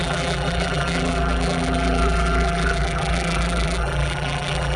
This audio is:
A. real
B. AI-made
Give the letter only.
B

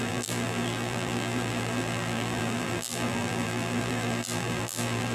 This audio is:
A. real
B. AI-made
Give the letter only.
B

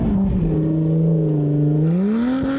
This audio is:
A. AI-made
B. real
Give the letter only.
B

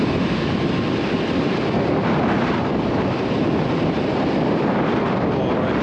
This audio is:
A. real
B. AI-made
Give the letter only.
A